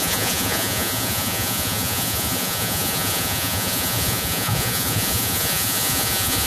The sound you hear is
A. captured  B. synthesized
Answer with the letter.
B